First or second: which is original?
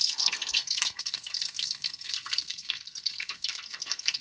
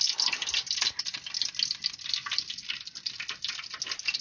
second